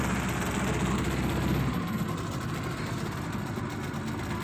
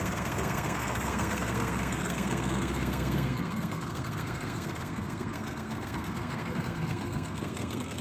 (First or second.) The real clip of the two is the first